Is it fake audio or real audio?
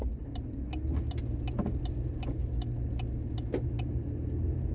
real